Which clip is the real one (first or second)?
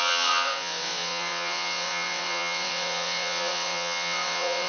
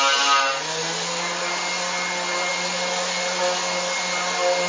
second